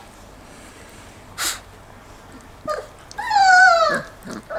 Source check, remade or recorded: recorded